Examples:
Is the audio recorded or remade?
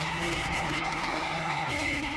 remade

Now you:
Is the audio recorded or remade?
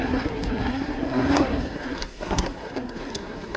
remade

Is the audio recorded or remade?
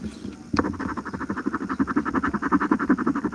recorded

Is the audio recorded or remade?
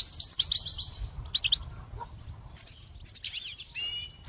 recorded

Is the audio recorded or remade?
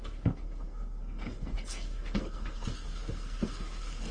remade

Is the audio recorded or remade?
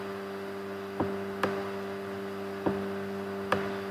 recorded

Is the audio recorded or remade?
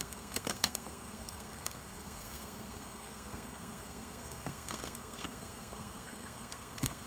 remade